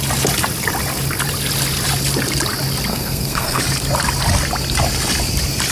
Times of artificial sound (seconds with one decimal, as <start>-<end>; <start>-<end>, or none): 2.9-3.6